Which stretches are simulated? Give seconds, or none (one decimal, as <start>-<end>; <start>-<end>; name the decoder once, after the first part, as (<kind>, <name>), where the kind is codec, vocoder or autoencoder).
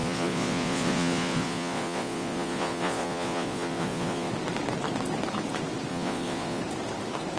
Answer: 0.0-4.3 (vocoder, Vocos); 5.9-6.6